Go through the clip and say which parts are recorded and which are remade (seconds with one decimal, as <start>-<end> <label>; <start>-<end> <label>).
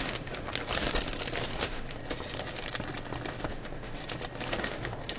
0.0-0.5 remade; 0.5-1.6 recorded; 1.6-2.0 remade; 2.0-3.5 recorded; 3.5-4.0 remade; 4.0-4.6 recorded; 4.6-5.2 remade